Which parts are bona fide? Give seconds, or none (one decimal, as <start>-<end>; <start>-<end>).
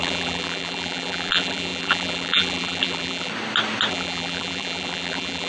3.3-3.9